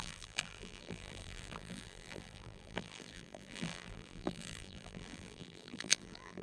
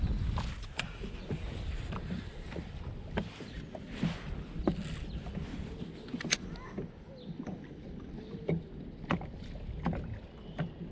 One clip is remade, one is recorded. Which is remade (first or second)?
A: first